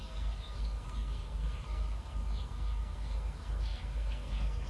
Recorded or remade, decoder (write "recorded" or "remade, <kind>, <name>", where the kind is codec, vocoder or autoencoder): remade, codec, SNAC